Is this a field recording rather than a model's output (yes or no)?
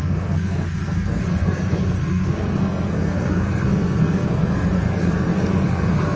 no